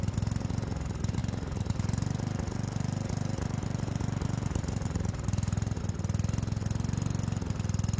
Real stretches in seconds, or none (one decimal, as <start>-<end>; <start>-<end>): 0.0-1.2; 5.8-8.0